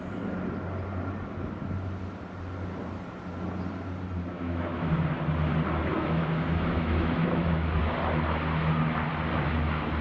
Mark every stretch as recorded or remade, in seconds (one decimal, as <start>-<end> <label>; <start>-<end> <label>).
0.0-4.3 recorded; 4.3-4.9 remade; 4.9-5.9 recorded; 5.9-7.8 remade; 7.8-10.0 recorded